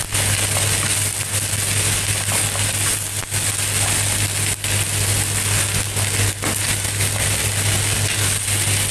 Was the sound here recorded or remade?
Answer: recorded